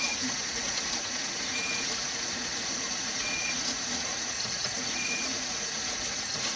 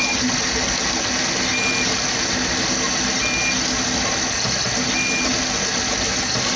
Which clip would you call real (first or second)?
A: second